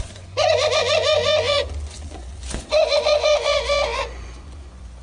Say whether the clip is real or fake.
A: fake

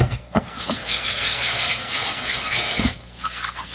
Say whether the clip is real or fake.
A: fake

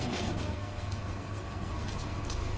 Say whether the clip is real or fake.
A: fake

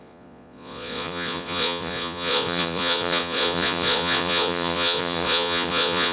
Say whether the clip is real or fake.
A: fake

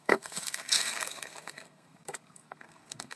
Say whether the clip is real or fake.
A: fake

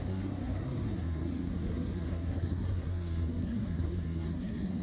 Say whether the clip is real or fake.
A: fake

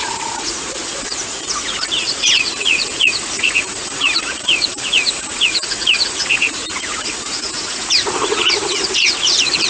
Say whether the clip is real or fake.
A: fake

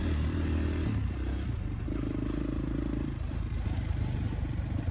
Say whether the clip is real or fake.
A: fake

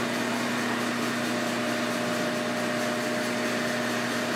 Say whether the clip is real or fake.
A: real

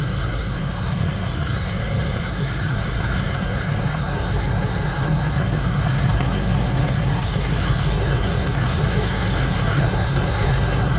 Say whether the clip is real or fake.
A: fake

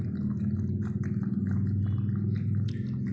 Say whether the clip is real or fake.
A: real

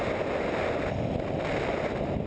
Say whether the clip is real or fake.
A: real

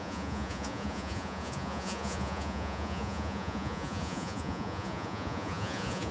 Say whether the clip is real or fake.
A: fake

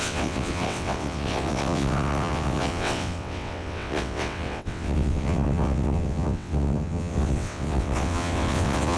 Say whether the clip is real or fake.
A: fake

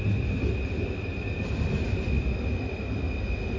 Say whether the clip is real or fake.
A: real